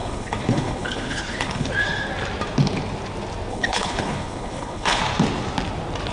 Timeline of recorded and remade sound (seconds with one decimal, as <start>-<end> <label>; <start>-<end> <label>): 0.0-1.7 remade; 1.7-3.5 recorded; 3.5-5.0 remade; 5.0-6.1 recorded